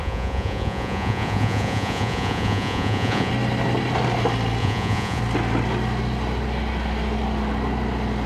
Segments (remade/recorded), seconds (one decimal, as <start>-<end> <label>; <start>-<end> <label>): 0.0-3.3 remade; 3.3-4.6 recorded; 4.6-5.2 remade; 5.2-8.3 recorded